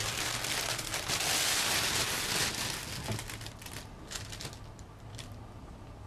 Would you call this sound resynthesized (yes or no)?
no